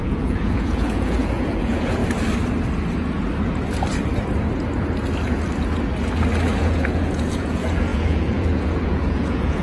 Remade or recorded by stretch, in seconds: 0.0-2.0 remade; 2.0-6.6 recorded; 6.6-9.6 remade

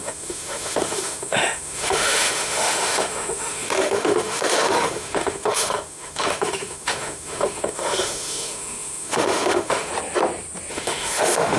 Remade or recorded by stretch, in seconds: 0.0-9.9 remade; 9.9-10.7 recorded; 10.7-11.6 remade

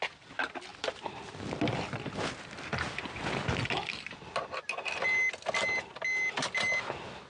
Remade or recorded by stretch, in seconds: 0.0-7.3 recorded

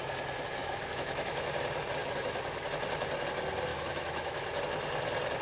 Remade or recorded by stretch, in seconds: 0.0-0.6 recorded; 0.6-1.5 remade; 1.5-2.0 recorded; 2.0-2.7 remade; 2.7-3.7 recorded; 3.7-4.6 remade; 4.6-5.4 recorded

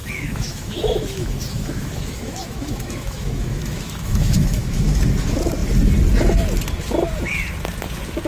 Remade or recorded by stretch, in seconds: 0.0-5.0 remade; 5.0-8.3 recorded

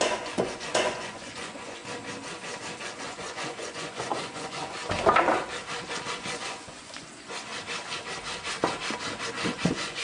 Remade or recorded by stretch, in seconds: 0.0-1.8 remade; 1.8-2.8 recorded; 2.8-4.8 remade; 4.8-6.1 recorded; 6.1-7.5 remade; 7.5-9.3 recorded; 9.3-10.0 remade